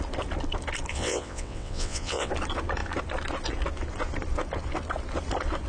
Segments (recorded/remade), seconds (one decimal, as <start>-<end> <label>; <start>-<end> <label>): 0.0-0.9 recorded; 0.9-2.3 remade; 2.3-5.7 recorded